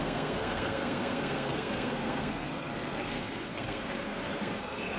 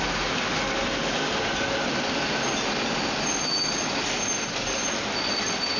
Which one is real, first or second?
second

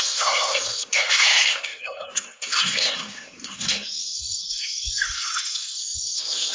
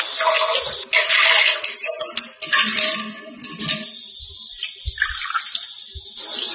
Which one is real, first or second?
second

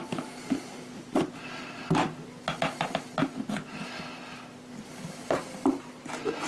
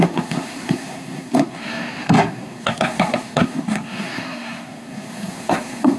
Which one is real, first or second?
first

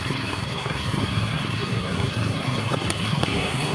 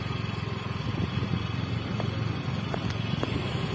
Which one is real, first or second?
second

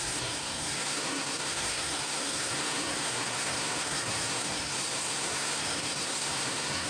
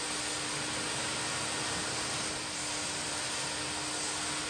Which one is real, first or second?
second